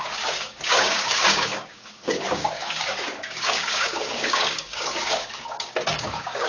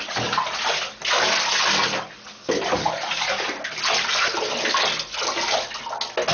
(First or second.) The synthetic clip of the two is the first